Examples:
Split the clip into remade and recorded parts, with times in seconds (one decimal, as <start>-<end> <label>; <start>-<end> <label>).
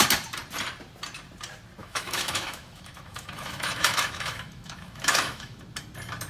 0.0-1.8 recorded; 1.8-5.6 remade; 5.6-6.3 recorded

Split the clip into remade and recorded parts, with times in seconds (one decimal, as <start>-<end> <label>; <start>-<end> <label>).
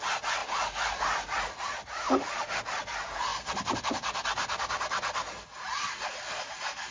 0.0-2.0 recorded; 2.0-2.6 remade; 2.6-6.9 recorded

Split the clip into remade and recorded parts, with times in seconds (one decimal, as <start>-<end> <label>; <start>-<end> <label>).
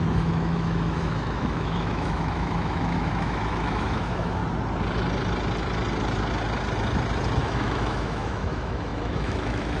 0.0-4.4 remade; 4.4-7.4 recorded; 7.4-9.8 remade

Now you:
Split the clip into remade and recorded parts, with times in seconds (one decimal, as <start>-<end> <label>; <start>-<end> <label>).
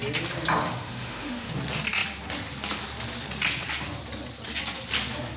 0.0-0.6 recorded; 0.6-1.5 remade; 1.5-5.4 recorded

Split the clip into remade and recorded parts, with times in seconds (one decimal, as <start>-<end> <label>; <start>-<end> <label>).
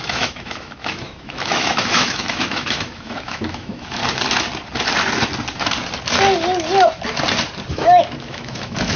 0.0-4.0 remade; 4.0-7.7 recorded; 7.7-9.0 remade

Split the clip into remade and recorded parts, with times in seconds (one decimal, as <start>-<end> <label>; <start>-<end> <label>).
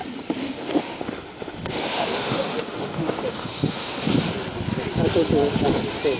0.0-0.4 recorded; 0.4-4.1 remade; 4.1-6.2 recorded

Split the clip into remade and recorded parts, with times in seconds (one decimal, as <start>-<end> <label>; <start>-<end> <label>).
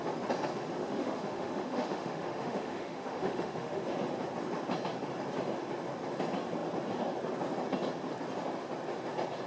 0.0-0.8 recorded; 0.8-3.8 remade; 3.8-9.5 recorded